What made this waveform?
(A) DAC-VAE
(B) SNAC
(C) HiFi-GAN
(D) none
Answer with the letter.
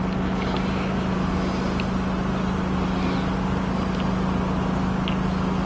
D